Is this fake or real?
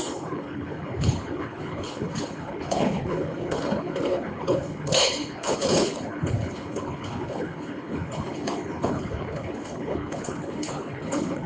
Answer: fake